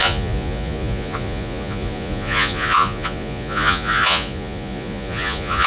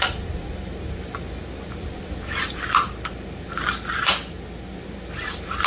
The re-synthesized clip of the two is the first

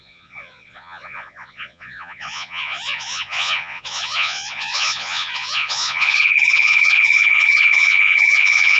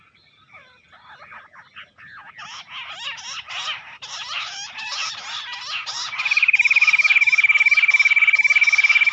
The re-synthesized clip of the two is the first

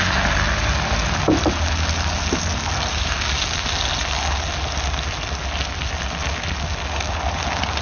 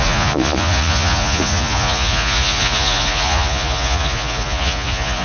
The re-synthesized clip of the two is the second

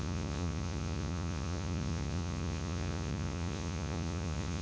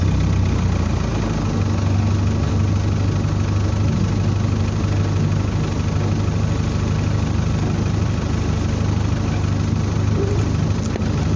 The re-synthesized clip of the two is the first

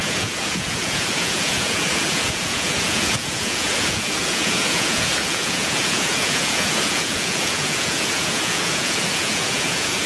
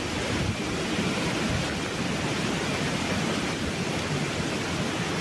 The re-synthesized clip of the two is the first